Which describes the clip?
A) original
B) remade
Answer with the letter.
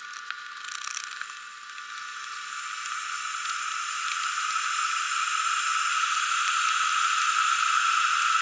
A